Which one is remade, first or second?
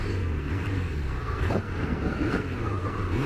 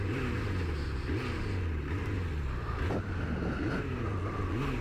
first